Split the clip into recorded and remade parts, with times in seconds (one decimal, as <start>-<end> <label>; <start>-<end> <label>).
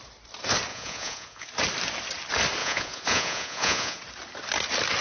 0.0-0.7 recorded; 0.7-1.5 remade; 1.5-2.6 recorded; 2.6-4.0 remade; 4.0-5.0 recorded